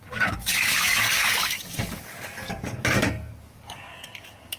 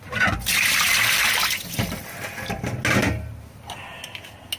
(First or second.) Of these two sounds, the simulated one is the first